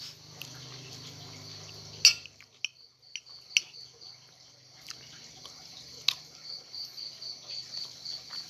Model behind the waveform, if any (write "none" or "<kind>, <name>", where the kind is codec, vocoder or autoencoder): none